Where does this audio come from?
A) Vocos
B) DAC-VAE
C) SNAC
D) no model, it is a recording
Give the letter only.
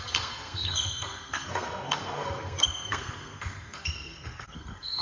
C